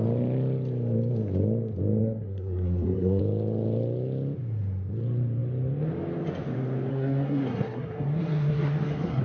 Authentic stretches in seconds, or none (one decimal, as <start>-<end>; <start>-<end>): 0.0-2.0; 3.2-6.9